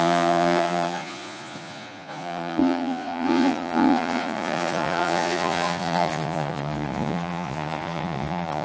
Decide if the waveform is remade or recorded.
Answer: remade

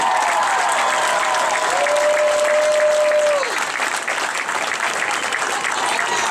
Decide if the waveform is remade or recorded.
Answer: recorded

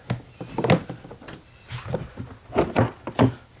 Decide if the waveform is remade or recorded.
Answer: recorded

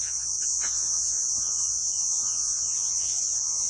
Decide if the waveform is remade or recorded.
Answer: remade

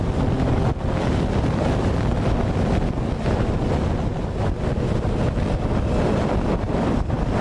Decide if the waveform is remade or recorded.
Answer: recorded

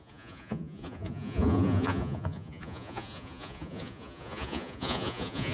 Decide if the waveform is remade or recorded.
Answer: remade